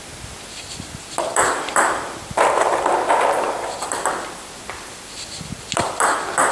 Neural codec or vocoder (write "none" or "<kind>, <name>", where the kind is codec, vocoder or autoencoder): vocoder, BigVGAN v2